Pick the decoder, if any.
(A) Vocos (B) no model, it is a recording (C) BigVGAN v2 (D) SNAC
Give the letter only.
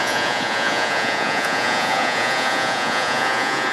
A